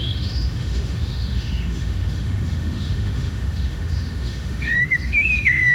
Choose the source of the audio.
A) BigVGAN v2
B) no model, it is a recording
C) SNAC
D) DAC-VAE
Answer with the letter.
D